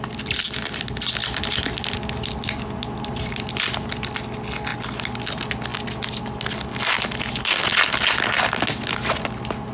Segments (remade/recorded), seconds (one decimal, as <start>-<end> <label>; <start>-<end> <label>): 0.0-9.7 recorded